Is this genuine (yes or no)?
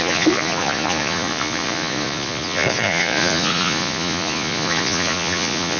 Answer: no